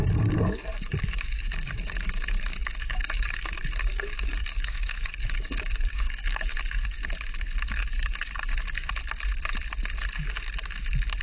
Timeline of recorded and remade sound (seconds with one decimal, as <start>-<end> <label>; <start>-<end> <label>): 0.0-7.0 remade; 7.0-7.7 recorded; 7.7-8.5 remade; 8.5-11.2 recorded